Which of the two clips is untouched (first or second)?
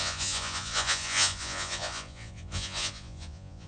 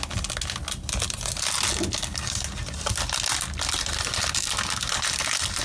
second